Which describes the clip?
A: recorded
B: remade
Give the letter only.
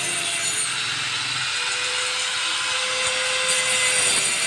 A